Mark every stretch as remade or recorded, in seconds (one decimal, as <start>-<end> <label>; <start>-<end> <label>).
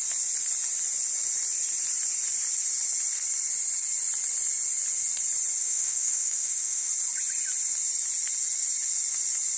0.0-5.6 recorded; 5.6-6.9 remade; 6.9-9.6 recorded